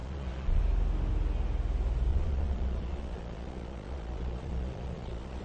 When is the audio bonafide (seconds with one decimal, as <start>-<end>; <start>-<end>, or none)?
0.6-2.1